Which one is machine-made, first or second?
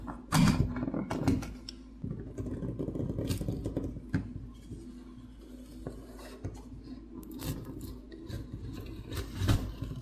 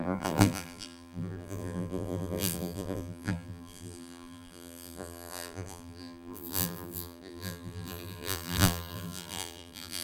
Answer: second